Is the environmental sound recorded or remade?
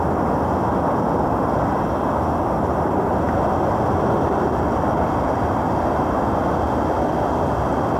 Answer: recorded